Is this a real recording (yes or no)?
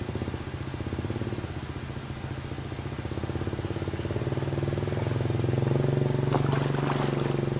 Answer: yes